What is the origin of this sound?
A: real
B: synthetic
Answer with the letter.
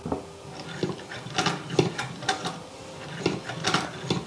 A